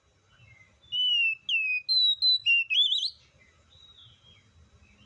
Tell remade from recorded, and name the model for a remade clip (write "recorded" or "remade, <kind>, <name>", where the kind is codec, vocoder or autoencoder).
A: recorded